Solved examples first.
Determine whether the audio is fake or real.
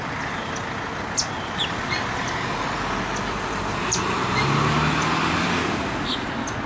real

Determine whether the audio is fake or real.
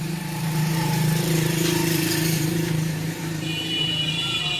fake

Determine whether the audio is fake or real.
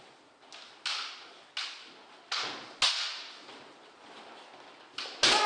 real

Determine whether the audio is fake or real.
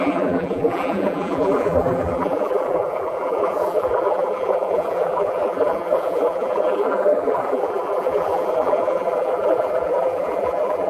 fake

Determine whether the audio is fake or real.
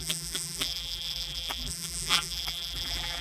fake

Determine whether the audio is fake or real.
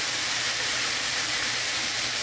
fake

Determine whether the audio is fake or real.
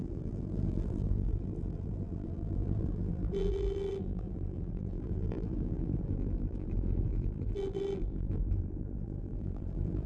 fake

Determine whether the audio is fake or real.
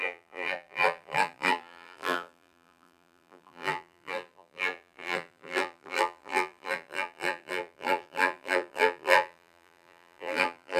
fake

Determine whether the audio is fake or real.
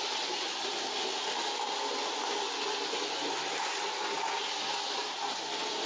real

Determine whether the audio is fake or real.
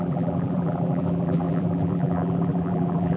fake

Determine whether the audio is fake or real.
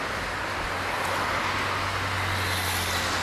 real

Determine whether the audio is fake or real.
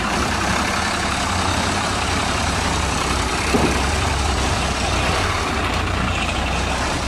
fake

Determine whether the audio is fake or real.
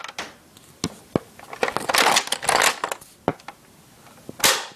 real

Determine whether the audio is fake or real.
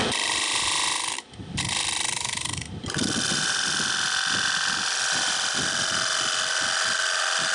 fake